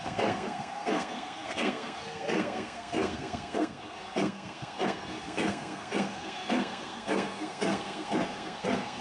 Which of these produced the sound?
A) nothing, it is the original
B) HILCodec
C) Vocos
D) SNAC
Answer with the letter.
D